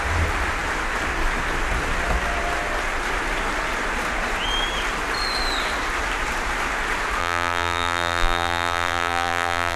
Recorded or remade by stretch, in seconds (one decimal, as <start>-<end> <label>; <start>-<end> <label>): 0.0-7.2 recorded; 7.2-9.8 remade